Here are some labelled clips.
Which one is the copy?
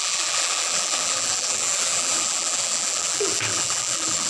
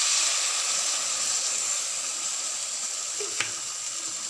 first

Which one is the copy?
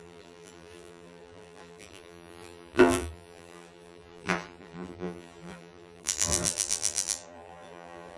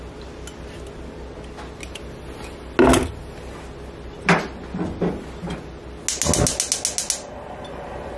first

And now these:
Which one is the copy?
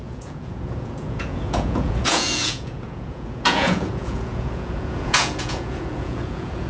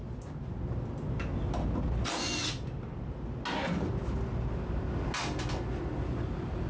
first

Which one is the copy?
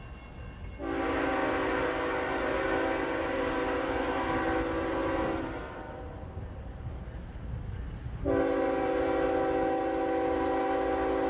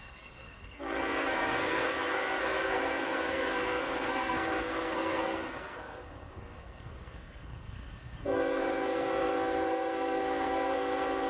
second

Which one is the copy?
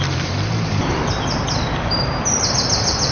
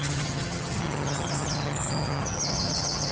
second